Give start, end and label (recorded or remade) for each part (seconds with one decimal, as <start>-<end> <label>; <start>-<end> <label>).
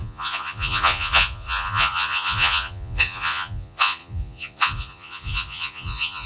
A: 0.0-6.3 remade